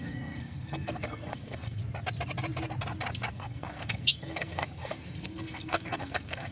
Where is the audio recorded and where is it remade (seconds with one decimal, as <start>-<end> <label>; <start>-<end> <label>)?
0.0-1.8 remade; 1.8-3.3 recorded; 3.3-6.5 remade